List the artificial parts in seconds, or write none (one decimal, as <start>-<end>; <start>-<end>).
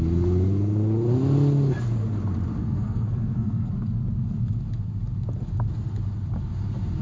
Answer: 2.6-3.7